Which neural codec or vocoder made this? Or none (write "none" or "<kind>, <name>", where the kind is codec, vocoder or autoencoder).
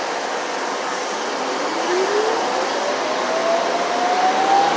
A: none